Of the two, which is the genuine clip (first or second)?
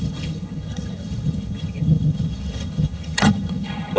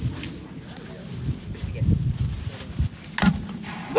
second